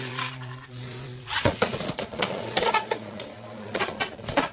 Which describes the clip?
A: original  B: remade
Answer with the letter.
B